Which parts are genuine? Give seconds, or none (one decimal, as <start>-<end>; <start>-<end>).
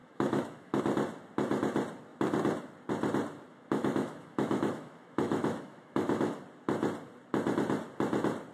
0.8-3.5; 6.4-8.5